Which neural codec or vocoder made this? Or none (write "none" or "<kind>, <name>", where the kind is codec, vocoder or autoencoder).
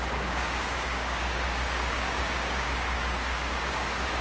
codec, DAC